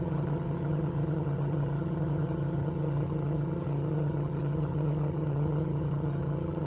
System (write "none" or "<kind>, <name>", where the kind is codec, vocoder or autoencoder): vocoder, HiFi-GAN